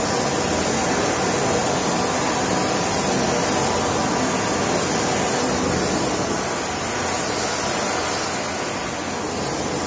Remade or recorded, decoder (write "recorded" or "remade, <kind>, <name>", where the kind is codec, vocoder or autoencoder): recorded